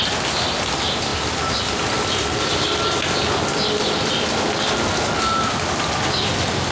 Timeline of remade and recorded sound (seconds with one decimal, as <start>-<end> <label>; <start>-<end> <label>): 0.0-6.7 recorded